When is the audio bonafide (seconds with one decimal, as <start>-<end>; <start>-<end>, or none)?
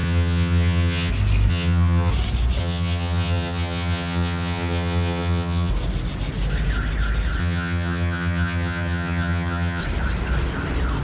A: 1.1-1.5; 2.1-2.6; 5.7-7.4; 9.8-11.0